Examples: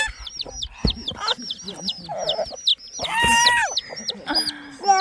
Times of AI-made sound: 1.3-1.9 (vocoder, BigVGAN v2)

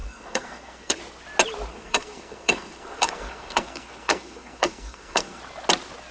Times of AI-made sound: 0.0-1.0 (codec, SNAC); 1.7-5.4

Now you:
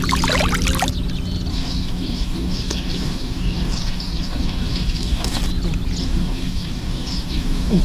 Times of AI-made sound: 1.5-5.4 (codec, DAC); 6.0-7.8

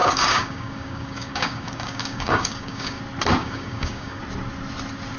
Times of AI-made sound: 0.0-3.0 (codec, DAC); 3.4-4.2